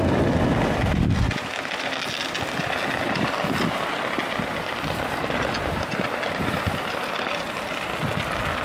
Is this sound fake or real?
real